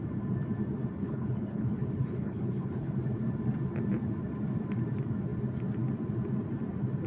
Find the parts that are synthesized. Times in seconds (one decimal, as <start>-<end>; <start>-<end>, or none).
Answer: 1.0-2.9